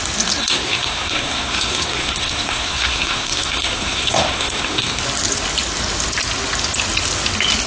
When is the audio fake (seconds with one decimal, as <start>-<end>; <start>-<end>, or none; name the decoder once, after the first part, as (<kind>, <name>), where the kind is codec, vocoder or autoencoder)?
0.4-5.0 (codec, SNAC)